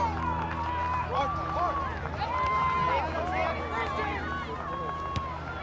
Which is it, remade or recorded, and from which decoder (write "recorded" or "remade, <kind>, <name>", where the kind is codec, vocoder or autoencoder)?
recorded